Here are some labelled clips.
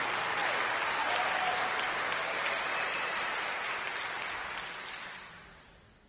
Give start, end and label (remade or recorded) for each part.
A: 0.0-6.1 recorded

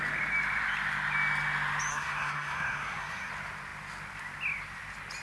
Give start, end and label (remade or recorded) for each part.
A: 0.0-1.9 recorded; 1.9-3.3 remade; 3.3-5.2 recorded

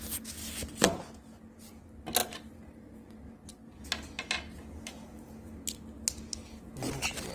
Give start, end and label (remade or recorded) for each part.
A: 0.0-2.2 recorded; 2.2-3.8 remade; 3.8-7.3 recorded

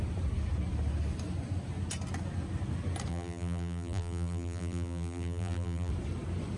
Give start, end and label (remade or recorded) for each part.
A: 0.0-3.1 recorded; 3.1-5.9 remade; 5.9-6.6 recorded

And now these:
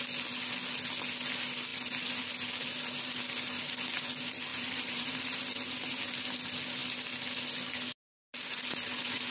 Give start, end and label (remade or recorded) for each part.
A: 0.0-4.5 recorded; 4.5-5.2 remade; 5.2-9.3 recorded

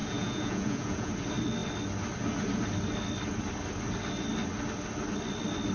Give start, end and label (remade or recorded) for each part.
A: 0.0-1.1 remade; 1.1-5.7 recorded

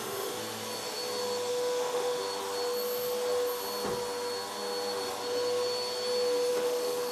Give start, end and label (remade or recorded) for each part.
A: 0.0-0.4 remade; 0.4-1.5 recorded; 1.5-2.2 remade; 2.2-6.5 recorded; 6.5-7.1 remade